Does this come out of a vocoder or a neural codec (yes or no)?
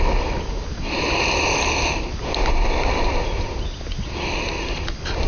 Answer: no